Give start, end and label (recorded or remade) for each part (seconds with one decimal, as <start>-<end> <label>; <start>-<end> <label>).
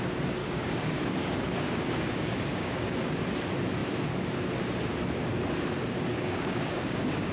0.0-0.4 recorded; 0.4-2.9 remade; 2.9-6.1 recorded; 6.1-7.3 remade